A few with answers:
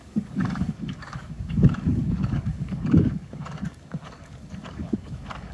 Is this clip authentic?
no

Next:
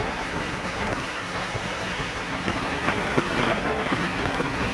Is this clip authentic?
no